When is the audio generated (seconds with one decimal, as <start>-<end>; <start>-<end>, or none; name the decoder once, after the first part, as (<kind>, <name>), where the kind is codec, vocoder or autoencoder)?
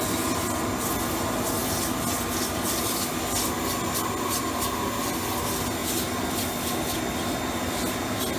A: none